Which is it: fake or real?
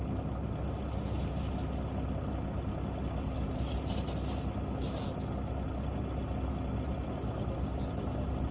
real